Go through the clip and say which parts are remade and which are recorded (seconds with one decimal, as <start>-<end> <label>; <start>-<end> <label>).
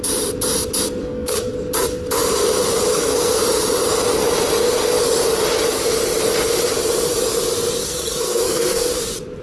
0.0-1.0 recorded; 1.0-1.5 remade; 1.5-2.9 recorded; 2.9-3.4 remade; 3.4-7.8 recorded; 7.8-8.9 remade; 8.9-9.4 recorded